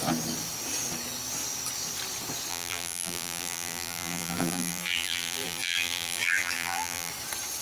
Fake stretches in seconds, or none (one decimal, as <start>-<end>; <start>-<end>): 2.5-7.1